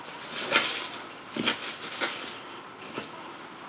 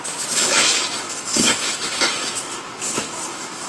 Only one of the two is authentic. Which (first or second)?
first